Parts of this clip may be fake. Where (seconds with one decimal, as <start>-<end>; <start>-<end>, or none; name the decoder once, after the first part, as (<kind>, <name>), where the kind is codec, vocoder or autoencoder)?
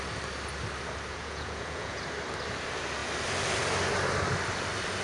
1.1-2.0 (vocoder, Vocos)